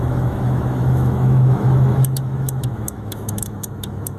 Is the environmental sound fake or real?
fake